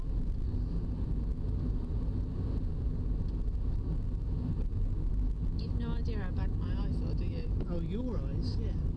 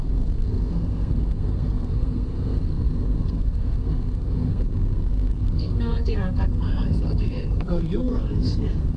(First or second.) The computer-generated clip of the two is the second